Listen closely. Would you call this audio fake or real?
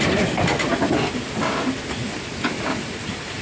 real